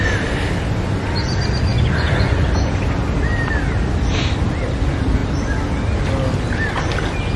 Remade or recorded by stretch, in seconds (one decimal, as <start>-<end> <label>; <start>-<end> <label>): 0.0-1.7 recorded; 1.7-2.8 remade; 2.8-7.4 recorded